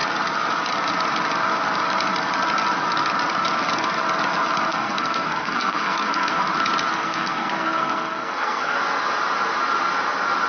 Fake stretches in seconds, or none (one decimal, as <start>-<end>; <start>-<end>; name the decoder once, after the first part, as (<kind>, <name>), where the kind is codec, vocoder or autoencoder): 4.7-6.5 (codec, SNAC); 7.0-8.8